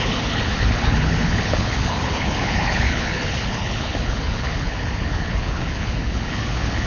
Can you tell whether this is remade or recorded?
remade